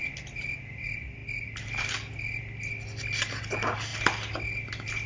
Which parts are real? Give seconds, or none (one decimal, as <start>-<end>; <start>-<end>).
0.0-5.1